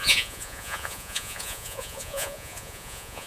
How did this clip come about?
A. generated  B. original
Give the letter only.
A